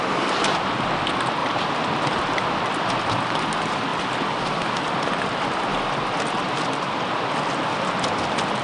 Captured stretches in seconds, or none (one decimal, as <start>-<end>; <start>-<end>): 0.0-1.4; 2.4-3.9; 4.5-8.6